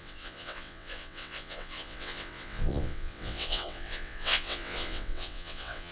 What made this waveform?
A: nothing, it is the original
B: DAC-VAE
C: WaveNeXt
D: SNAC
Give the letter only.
C